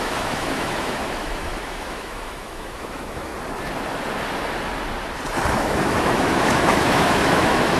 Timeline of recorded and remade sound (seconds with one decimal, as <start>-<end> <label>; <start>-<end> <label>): 0.0-3.3 remade; 3.3-5.5 recorded; 5.5-7.8 remade